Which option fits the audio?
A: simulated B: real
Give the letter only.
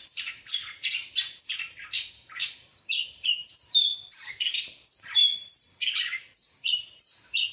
A